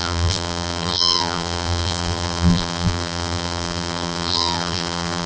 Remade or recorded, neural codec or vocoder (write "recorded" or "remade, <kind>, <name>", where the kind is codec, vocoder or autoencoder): remade, vocoder, BigVGAN v2